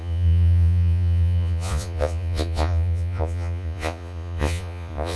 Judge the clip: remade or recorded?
remade